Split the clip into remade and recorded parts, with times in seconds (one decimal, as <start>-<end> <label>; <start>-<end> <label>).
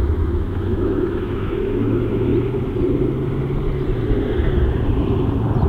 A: 0.0-2.3 remade; 2.3-5.7 recorded